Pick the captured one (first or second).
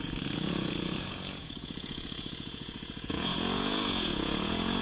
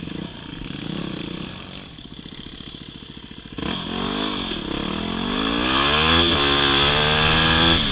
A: second